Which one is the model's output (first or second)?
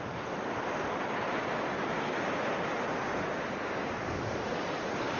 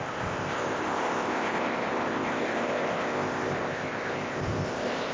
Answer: second